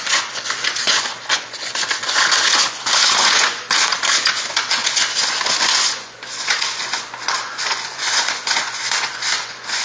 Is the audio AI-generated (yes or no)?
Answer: yes